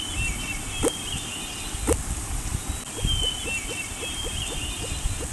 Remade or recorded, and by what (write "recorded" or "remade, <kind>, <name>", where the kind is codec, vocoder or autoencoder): recorded